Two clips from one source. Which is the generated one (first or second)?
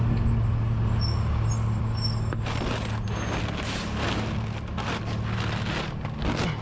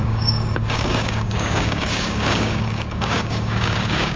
second